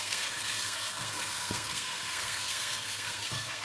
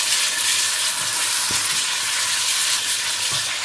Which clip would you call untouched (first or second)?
second